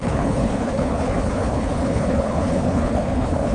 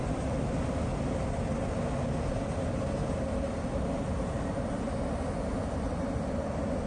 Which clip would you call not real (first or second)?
first